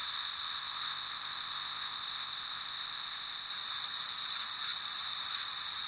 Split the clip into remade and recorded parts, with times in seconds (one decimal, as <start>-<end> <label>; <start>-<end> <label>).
0.0-3.5 remade; 3.5-5.9 recorded